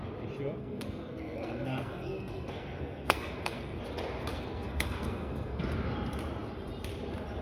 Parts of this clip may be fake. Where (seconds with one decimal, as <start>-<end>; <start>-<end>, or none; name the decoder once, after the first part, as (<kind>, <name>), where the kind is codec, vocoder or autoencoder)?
0.6-3.8 (codec, SNAC); 4.3-5.6